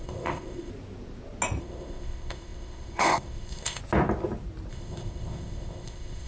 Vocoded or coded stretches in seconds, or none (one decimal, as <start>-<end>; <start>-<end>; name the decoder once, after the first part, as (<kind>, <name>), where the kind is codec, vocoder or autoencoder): 0.0-0.7 (codec, ZipCodec); 1.6-3.8; 4.7-6.3